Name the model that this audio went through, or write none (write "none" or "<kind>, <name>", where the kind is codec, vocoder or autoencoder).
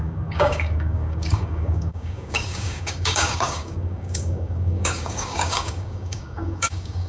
codec, DAC